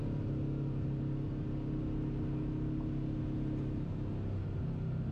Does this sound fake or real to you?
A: real